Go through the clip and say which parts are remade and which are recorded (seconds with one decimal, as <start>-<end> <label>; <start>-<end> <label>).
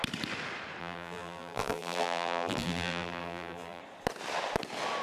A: 0.0-0.8 recorded; 0.8-3.8 remade; 3.8-5.0 recorded